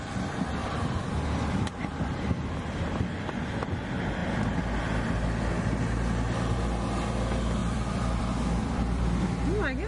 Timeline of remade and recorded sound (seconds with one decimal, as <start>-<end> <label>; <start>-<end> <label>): 0.0-0.6 recorded; 0.6-3.8 remade; 3.8-7.6 recorded; 7.6-8.2 remade; 8.2-8.6 recorded; 8.6-9.2 remade; 9.2-9.9 recorded